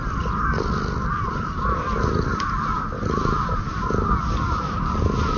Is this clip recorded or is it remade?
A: recorded